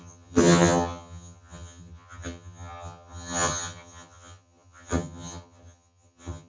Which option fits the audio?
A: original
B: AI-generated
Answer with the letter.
B